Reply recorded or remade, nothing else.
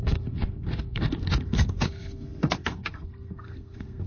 remade